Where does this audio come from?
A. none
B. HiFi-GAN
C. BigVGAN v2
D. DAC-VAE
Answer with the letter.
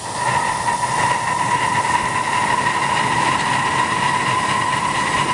A